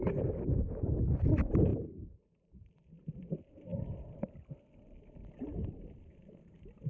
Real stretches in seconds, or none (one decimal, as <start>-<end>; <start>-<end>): 0.0-6.9